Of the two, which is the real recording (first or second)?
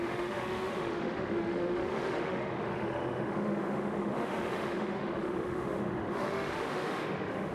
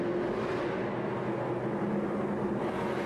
second